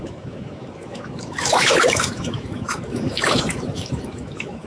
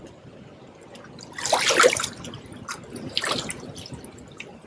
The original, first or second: second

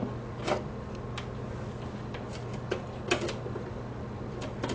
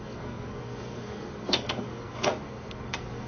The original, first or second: first